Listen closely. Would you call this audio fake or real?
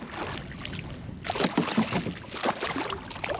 real